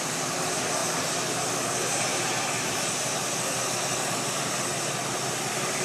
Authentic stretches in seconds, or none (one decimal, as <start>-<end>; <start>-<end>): 0.0-2.1; 3.1-4.0; 4.5-5.8